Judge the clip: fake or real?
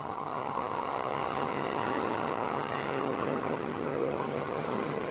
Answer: fake